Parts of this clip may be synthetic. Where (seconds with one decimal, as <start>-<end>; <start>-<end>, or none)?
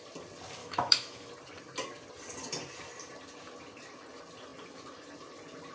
0.6-1.3